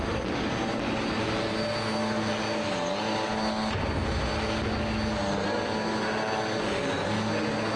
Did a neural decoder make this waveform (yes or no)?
no